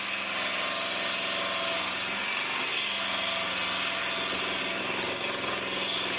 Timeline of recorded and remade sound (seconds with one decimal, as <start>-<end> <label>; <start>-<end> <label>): 0.0-6.2 recorded